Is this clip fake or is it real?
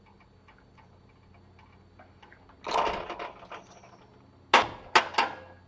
real